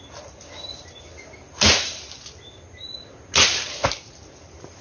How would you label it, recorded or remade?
recorded